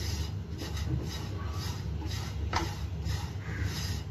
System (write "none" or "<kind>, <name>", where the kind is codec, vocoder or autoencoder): none